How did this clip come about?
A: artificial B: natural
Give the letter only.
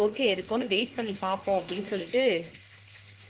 A